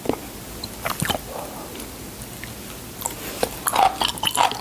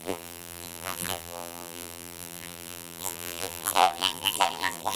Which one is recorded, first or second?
first